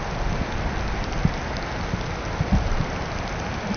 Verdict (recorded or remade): recorded